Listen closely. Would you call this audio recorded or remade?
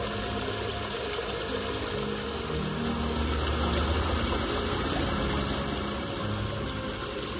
recorded